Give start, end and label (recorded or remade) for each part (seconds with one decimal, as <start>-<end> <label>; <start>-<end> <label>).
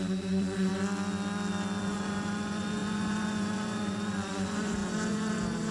0.0-0.7 remade; 0.7-1.8 recorded; 1.8-5.7 remade